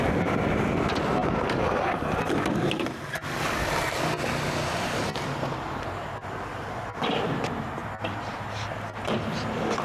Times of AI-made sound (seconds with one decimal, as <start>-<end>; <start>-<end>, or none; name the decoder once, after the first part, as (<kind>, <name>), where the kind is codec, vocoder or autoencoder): none